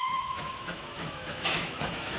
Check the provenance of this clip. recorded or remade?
remade